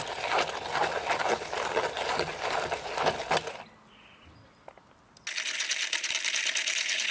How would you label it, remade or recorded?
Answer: recorded